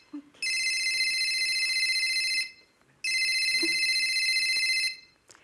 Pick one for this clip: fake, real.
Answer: real